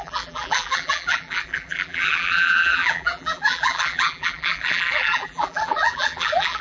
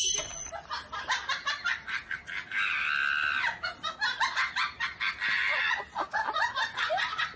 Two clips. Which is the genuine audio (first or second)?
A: second